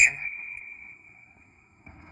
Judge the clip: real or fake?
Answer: fake